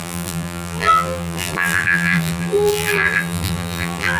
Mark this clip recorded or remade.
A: remade